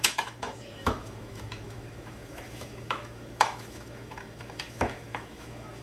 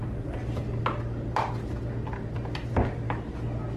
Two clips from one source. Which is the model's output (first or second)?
first